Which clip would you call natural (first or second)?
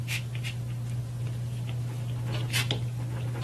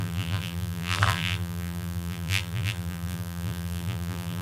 first